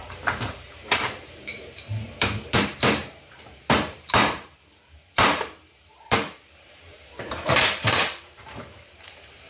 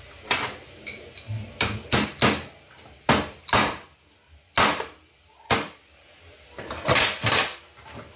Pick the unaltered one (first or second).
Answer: second